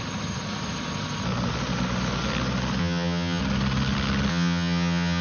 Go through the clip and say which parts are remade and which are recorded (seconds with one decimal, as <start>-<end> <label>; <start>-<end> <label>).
0.0-2.8 recorded; 2.8-3.4 remade; 3.4-4.3 recorded; 4.3-5.2 remade

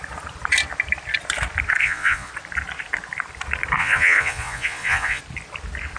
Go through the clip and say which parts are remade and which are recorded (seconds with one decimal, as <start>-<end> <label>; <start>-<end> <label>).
0.0-1.8 recorded; 1.8-2.3 remade; 2.3-3.8 recorded; 3.8-5.2 remade; 5.2-6.0 recorded

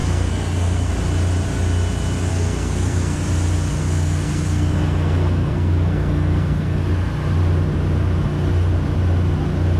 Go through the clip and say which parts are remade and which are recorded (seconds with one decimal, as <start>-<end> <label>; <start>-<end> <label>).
0.0-0.9 remade; 0.9-2.3 recorded; 2.3-3.2 remade; 3.2-3.8 recorded; 3.8-6.8 remade; 6.8-9.8 recorded

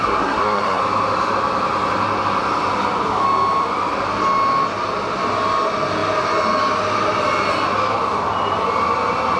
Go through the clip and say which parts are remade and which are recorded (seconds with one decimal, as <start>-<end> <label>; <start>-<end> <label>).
0.0-0.8 remade; 0.8-9.4 recorded

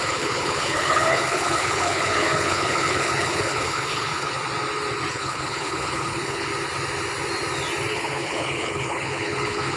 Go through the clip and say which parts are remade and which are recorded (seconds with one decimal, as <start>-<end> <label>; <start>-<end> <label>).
0.0-4.4 remade; 4.4-5.1 recorded; 5.1-6.5 remade; 6.5-7.9 recorded; 7.9-9.8 remade